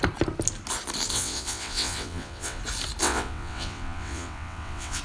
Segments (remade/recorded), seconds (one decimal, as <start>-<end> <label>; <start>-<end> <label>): 0.0-1.1 recorded; 1.1-2.6 remade; 2.6-3.0 recorded; 3.0-5.0 remade